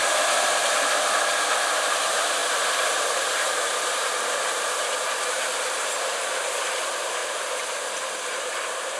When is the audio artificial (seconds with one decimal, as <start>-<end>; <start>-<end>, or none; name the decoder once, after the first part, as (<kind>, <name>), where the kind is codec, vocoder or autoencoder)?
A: 0.6-7.2 (vocoder, BigVGAN v2); 8.0-9.0